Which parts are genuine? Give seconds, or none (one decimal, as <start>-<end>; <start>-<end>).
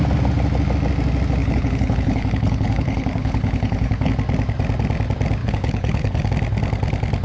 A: 0.0-1.4; 4.1-5.4; 6.3-7.2